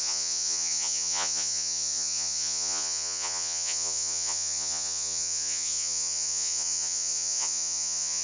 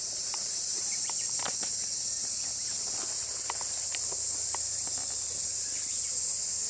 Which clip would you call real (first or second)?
second